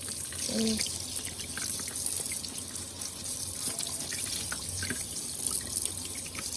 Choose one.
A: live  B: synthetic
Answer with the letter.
A